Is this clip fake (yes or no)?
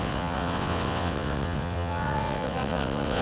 yes